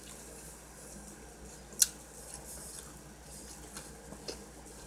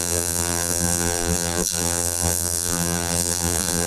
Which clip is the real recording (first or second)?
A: first